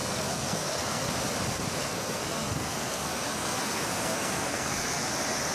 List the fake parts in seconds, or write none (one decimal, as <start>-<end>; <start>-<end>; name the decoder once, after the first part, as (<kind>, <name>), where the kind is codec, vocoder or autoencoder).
0.0-1.1 (codec, SNAC); 1.8-5.1